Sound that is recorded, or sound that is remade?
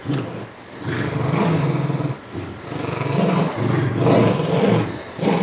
recorded